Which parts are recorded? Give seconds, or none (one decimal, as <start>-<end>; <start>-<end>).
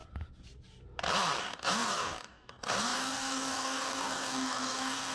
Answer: 0.0-1.4